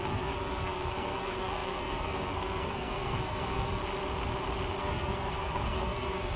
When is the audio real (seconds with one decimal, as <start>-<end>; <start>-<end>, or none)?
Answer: 3.8-4.8